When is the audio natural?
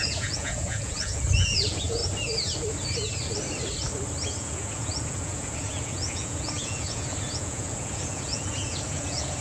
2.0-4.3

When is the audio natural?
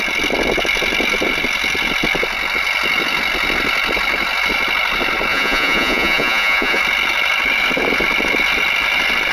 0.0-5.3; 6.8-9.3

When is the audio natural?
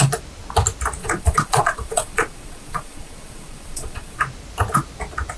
0.0-1.0; 4.2-5.4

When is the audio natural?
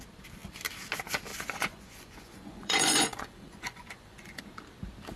0.0-1.3; 4.4-5.2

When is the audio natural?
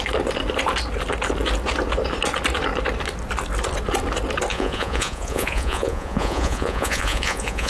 0.0-4.5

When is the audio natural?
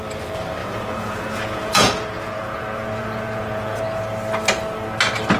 0.0-0.6; 3.8-5.4